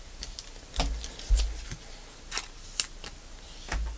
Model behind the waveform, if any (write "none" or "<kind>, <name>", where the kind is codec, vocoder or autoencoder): none